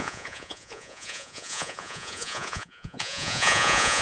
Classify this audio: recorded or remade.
remade